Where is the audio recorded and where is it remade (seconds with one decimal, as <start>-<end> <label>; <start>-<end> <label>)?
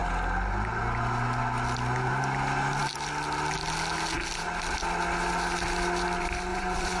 0.0-6.5 recorded; 6.5-7.0 remade